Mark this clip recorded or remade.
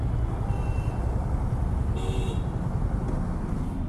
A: recorded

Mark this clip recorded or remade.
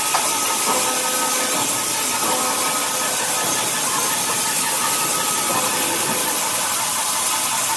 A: recorded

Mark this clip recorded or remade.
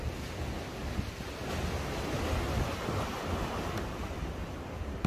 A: recorded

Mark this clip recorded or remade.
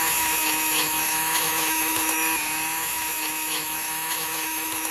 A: remade